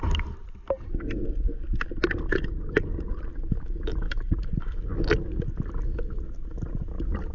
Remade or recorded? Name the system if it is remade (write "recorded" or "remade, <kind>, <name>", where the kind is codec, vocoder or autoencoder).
recorded